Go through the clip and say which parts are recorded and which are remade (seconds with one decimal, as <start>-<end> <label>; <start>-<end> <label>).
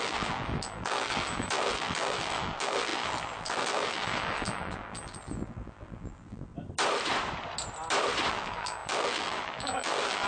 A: 0.0-6.5 remade; 6.5-8.3 recorded; 8.3-10.3 remade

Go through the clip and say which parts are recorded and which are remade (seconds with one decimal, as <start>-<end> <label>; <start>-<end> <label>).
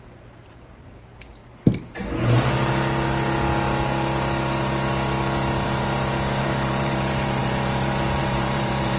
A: 0.0-1.4 remade; 1.4-6.4 recorded; 6.4-9.0 remade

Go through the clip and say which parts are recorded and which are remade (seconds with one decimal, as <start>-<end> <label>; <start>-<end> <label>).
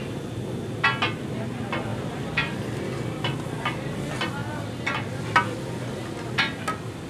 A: 0.0-1.9 recorded; 1.9-2.6 remade; 2.6-7.1 recorded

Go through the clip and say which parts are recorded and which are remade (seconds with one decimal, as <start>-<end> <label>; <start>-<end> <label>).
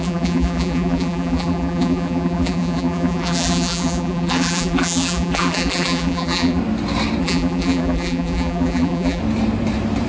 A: 0.0-6.6 remade; 6.6-7.2 recorded; 7.2-9.2 remade; 9.2-10.1 recorded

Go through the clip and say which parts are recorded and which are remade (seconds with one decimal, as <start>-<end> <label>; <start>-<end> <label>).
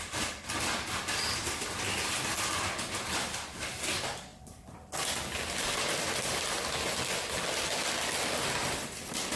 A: 0.0-9.4 recorded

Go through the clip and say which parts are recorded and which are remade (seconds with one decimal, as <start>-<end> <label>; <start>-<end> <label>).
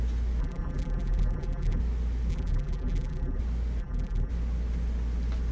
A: 0.0-0.4 recorded; 0.4-1.8 remade; 1.8-2.3 recorded; 2.3-3.4 remade; 3.4-3.8 recorded; 3.8-4.3 remade; 4.3-5.5 recorded